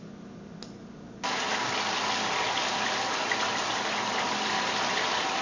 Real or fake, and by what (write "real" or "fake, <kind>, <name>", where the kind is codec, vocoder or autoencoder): real